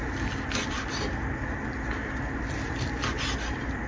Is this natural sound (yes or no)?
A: yes